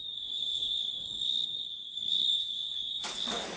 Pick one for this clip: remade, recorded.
remade